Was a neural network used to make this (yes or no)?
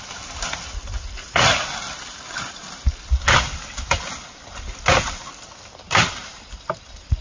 no